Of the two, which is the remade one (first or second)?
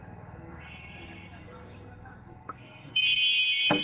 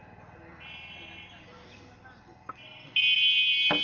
first